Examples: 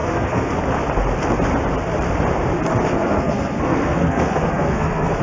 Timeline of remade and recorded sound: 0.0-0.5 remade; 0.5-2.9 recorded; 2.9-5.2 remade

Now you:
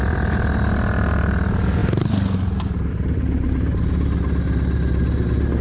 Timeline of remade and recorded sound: 0.0-5.6 recorded

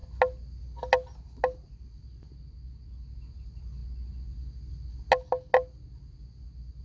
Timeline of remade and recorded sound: 0.0-6.8 recorded

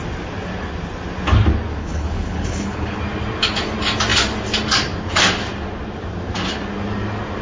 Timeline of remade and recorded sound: 0.0-1.8 recorded; 1.8-3.0 remade; 3.0-7.4 recorded

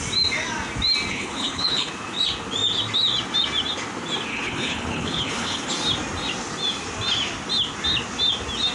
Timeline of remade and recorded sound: 0.0-1.1 recorded; 1.1-1.9 remade; 1.9-4.3 recorded; 4.3-5.7 remade; 5.7-8.7 recorded

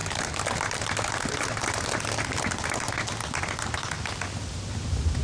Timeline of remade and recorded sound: 0.0-5.2 recorded

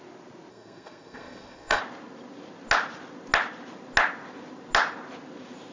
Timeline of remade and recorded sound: 0.0-0.5 recorded; 0.5-1.8 remade; 1.8-5.7 recorded

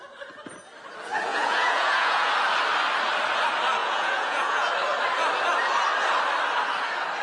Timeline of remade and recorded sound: 0.0-1.3 recorded; 1.3-2.3 remade; 2.3-3.8 recorded; 3.8-4.7 remade; 4.7-7.2 recorded